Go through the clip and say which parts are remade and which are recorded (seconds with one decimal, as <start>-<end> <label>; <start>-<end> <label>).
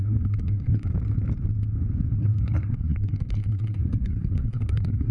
0.0-0.9 remade; 0.9-2.2 recorded; 2.2-5.1 remade